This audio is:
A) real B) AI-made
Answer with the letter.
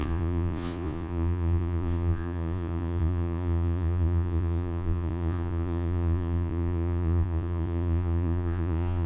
B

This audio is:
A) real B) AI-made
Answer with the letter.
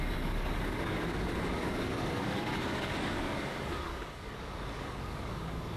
B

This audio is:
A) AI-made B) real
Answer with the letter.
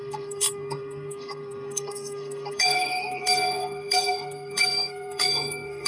A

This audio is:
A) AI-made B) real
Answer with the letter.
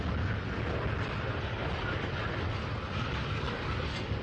B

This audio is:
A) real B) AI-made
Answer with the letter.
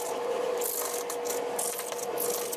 A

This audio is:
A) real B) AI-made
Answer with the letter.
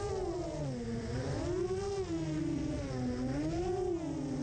A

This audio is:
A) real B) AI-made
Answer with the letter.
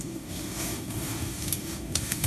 B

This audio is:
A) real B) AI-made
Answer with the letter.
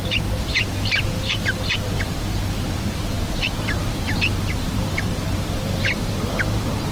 B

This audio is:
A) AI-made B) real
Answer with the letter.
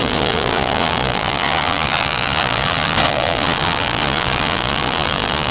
A